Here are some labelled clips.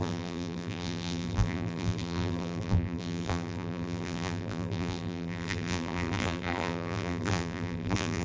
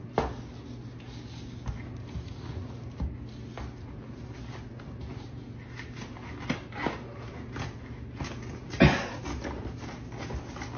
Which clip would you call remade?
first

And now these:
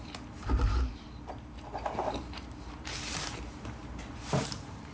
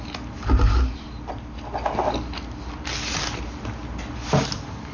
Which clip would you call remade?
first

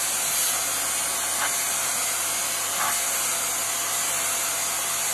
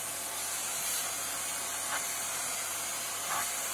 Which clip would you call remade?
second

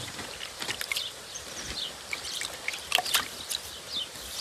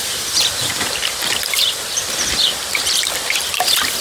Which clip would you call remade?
second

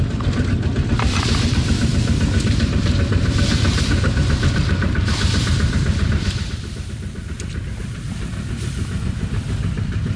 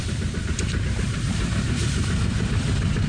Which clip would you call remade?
second